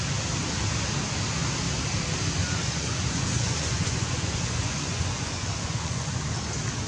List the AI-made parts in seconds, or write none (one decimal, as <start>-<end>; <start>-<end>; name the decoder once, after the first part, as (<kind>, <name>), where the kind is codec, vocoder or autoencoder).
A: 2.4-6.2 (vocoder, Vocos)